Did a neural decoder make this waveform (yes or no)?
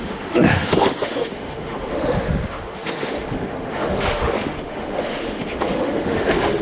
yes